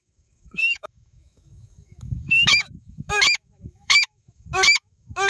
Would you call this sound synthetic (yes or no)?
yes